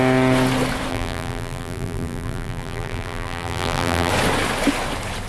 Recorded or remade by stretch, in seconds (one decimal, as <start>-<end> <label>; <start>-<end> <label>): 0.0-0.9 recorded; 0.9-4.1 remade; 4.1-5.3 recorded